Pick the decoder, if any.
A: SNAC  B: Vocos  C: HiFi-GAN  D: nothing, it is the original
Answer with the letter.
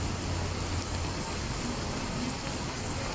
D